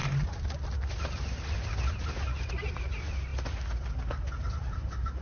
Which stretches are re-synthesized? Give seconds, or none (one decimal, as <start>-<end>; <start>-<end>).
none